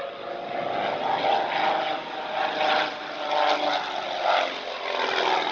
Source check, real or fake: real